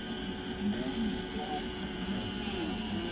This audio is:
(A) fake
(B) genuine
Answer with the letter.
B